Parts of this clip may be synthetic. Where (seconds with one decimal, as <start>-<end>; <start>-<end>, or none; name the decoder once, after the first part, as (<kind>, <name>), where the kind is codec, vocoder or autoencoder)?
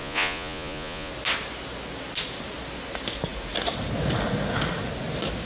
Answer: 0.0-1.1 (vocoder, Vocos)